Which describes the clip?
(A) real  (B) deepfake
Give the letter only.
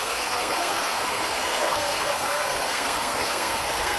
B